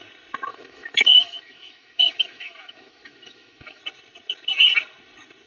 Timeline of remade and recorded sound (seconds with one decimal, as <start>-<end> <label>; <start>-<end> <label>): 0.0-0.5 recorded; 0.5-3.8 remade; 3.8-5.5 recorded